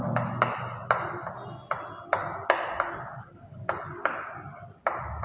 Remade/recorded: recorded